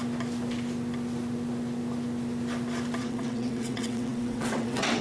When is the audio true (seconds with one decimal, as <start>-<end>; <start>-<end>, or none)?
0.0-3.0